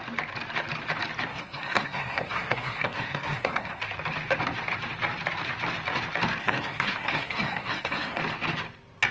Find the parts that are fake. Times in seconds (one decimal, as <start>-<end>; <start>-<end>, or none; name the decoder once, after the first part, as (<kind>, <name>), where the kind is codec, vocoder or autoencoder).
1.3-3.8 (codec, SNAC); 6.4-8.2